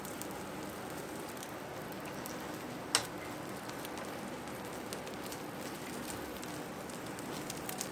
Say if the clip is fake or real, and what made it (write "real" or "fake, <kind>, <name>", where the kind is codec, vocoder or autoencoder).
real